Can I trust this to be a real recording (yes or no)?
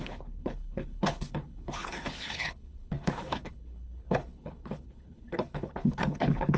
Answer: no